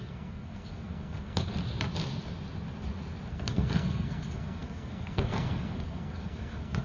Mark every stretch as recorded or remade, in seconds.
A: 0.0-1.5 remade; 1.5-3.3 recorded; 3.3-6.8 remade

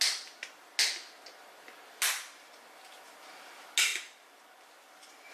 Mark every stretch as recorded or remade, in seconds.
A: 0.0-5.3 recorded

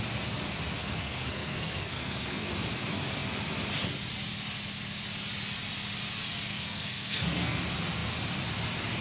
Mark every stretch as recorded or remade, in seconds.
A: 0.0-0.8 recorded; 0.8-2.5 remade; 2.5-6.5 recorded; 6.5-7.6 remade; 7.6-9.0 recorded

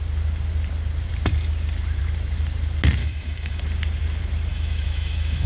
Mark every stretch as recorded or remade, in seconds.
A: 0.0-3.0 recorded; 3.0-3.6 remade; 3.6-4.5 recorded; 4.5-5.5 remade